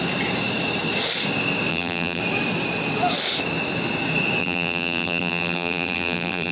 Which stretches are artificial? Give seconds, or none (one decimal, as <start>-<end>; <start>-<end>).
1.7-2.2; 4.4-6.5